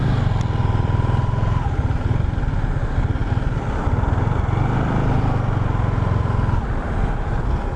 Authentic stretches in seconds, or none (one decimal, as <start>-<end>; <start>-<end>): 0.0-7.8